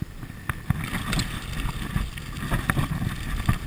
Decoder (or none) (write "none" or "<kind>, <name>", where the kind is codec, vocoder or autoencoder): none